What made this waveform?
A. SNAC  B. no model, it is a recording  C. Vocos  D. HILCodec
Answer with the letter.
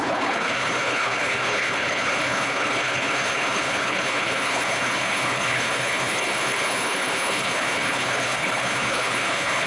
D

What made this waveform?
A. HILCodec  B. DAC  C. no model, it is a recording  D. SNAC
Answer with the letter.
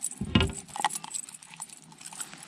C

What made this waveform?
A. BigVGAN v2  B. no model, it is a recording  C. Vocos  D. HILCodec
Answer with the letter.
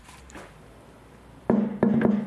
B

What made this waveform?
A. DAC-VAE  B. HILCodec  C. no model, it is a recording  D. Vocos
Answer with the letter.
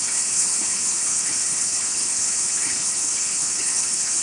B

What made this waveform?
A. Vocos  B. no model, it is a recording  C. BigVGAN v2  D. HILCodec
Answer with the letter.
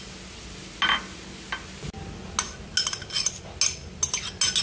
B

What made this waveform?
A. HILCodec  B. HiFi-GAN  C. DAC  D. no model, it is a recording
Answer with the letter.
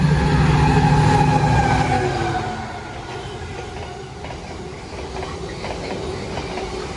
D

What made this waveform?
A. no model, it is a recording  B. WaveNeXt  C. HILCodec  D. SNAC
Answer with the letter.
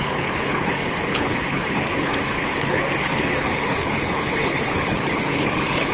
C